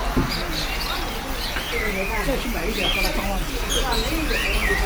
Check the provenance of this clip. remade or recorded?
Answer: recorded